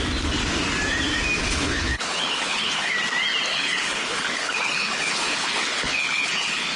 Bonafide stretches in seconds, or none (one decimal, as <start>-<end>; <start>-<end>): 0.0-1.4; 2.9-3.5

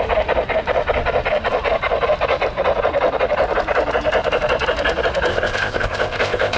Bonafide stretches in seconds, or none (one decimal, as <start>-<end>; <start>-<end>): 0.0-5.3

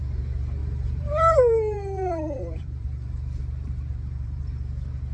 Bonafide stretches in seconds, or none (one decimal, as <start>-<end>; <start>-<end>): 0.0-0.6; 3.4-3.9; 4.4-5.1

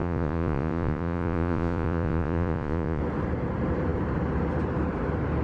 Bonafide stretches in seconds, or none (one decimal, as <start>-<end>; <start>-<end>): 3.0-5.4

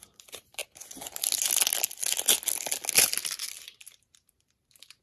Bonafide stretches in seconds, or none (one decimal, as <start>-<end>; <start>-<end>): 0.6-3.6

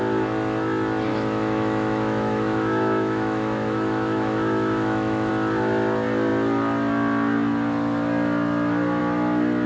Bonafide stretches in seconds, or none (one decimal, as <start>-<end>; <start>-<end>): 0.0-1.1; 5.3-9.7